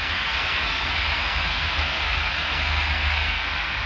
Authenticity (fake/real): fake